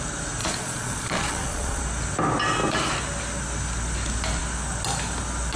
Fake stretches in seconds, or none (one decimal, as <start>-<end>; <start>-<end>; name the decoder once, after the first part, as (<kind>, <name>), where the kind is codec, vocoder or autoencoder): 0.4-1.8 (vocoder, Vocos)